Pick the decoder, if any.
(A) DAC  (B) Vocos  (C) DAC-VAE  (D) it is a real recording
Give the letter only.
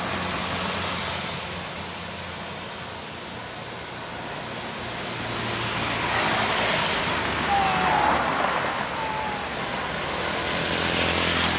D